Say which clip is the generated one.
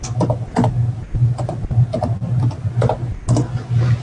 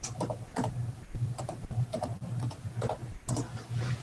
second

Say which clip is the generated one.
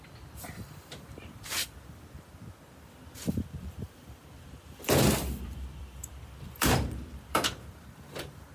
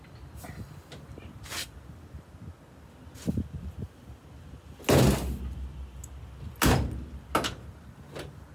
first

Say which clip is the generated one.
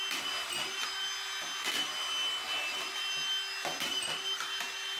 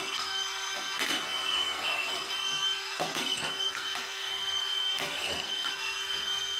second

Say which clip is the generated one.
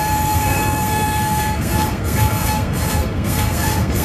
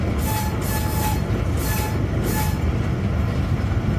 first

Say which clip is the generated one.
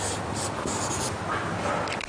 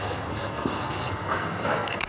second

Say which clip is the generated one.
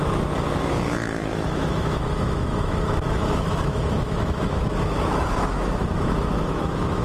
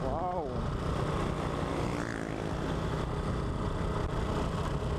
first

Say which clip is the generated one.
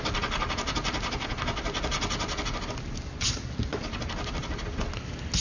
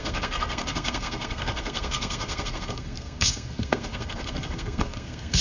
second